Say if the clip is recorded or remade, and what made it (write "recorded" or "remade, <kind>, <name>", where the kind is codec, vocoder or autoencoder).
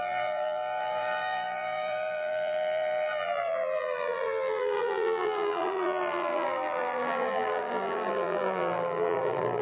remade, vocoder, BigVGAN v2